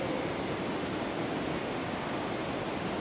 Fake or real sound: real